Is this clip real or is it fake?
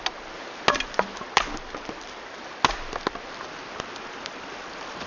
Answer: real